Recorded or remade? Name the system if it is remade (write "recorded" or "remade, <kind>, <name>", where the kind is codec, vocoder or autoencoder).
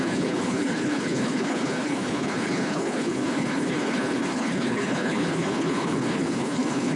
remade, codec, HILCodec